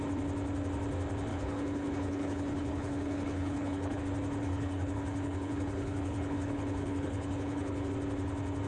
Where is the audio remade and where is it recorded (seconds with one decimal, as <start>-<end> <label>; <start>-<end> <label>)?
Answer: 0.0-1.3 recorded; 1.3-4.0 remade; 4.0-4.4 recorded; 4.4-7.9 remade; 7.9-8.7 recorded